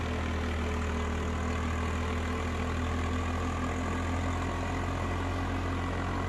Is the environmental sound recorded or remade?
recorded